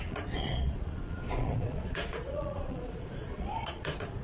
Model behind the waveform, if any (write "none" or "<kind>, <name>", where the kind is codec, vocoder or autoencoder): vocoder, Vocos